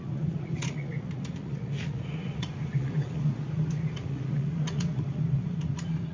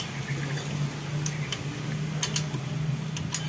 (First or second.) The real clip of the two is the second